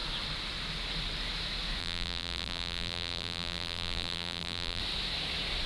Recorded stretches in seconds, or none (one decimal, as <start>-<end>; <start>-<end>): 0.0-1.8; 4.8-5.7